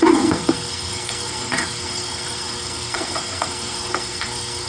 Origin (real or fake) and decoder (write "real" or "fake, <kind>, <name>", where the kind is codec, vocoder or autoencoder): fake, codec, SNAC